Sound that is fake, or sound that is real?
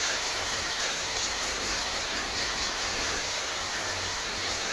fake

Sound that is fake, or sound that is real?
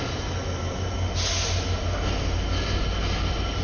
real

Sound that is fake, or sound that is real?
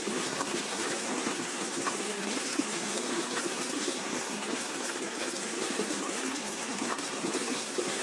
fake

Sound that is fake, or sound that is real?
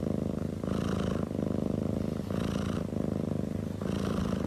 real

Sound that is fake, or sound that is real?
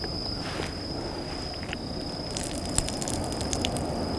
real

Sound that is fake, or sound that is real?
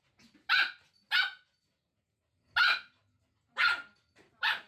real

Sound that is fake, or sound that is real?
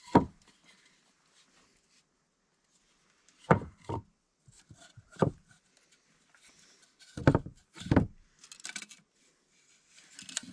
real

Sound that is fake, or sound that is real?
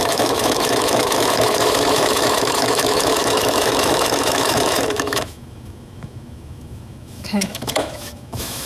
fake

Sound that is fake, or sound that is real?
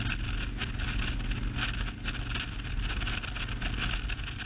real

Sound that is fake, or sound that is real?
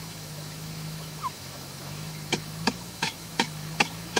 fake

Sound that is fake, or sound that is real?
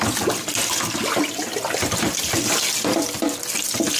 real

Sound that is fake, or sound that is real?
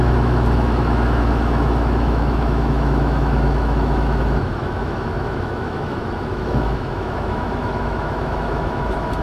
fake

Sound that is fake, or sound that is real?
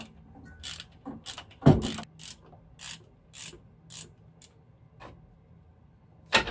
real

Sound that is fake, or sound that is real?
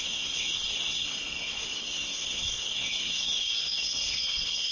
fake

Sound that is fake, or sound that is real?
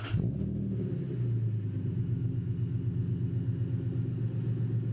real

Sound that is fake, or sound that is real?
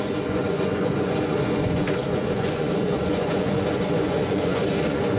fake